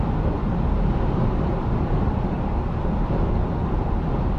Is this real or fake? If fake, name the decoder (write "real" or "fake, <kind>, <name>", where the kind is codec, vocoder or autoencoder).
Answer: real